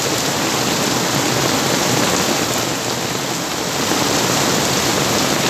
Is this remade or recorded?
recorded